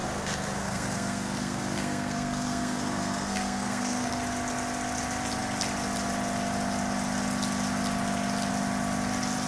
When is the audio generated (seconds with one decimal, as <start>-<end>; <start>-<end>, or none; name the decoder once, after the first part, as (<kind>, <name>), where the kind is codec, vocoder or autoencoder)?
0.0-4.1 (codec, SNAC)